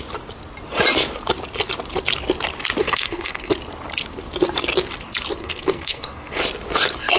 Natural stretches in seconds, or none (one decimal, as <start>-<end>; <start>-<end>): 0.0-2.8; 3.5-5.4; 6.4-7.2